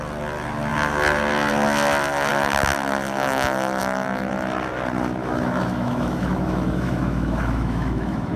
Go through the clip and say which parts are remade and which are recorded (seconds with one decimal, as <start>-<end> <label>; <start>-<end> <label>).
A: 0.0-5.2 recorded; 5.2-8.4 remade